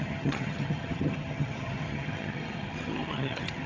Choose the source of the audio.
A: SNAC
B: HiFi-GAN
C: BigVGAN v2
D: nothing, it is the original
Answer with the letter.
B